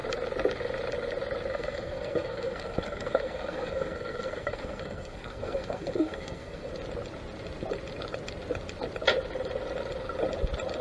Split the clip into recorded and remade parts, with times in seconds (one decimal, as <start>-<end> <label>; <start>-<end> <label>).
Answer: 0.0-1.5 recorded; 1.5-6.7 remade; 6.7-10.8 recorded